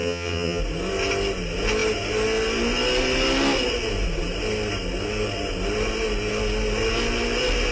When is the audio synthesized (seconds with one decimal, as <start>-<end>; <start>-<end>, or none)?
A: 0.0-0.6